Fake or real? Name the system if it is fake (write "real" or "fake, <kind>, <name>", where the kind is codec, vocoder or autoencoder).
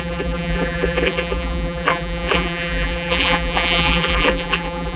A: fake, vocoder, BigVGAN v2